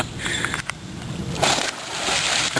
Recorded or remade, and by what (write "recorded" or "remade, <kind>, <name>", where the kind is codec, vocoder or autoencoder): recorded